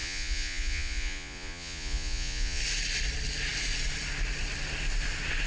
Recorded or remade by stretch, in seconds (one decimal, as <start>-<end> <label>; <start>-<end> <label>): 0.0-2.6 remade; 2.6-5.5 recorded